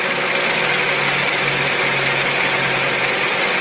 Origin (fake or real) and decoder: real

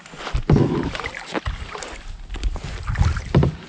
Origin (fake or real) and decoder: real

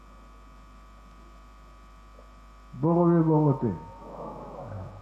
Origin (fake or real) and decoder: real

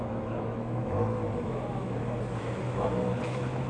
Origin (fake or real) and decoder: fake, autoencoder, DAC-VAE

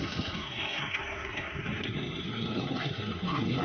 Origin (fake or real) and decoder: fake, codec, SNAC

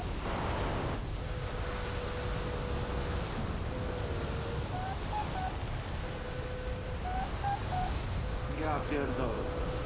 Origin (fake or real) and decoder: real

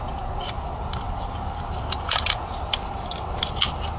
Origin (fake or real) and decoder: real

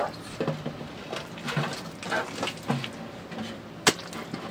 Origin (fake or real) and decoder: real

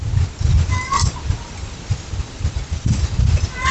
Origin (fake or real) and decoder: real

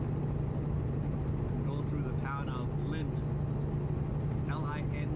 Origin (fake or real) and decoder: real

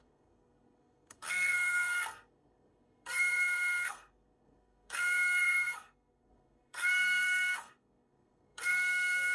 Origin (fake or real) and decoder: fake, codec, SNAC